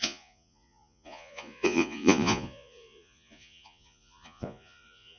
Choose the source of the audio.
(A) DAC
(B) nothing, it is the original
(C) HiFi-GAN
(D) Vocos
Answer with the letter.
D